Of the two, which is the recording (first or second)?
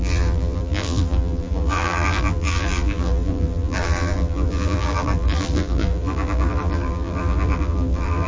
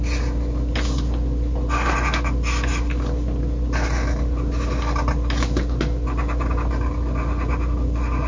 second